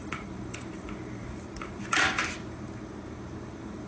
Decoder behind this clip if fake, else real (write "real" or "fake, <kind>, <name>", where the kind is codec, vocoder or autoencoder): fake, vocoder, BigVGAN v2